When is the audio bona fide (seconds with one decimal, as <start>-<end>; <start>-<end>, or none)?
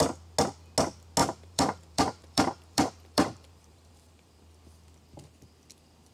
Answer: 0.0-1.2; 4.4-6.1